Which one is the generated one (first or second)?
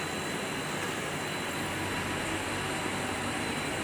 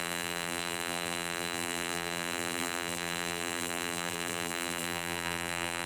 second